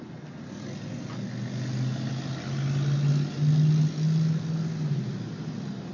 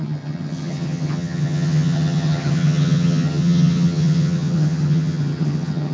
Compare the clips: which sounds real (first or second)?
first